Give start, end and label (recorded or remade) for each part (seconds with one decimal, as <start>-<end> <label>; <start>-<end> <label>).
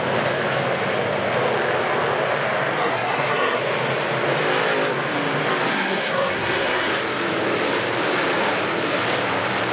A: 0.0-2.8 recorded; 2.8-3.6 remade; 3.6-5.7 recorded; 5.7-6.9 remade; 6.9-9.7 recorded